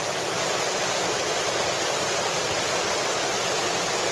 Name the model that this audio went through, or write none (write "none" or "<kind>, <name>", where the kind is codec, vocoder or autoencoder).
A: none